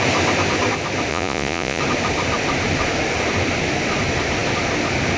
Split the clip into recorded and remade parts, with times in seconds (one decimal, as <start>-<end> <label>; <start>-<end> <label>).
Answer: 0.0-1.1 recorded; 1.1-1.8 remade; 1.8-5.2 recorded